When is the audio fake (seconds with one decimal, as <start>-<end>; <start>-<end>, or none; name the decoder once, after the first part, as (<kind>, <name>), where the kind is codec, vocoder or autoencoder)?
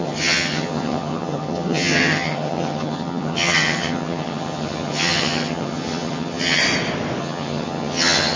0.0-6.6 (vocoder, HiFi-GAN); 7.2-8.4